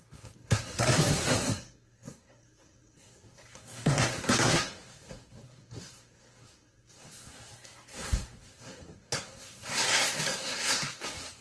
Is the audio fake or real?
fake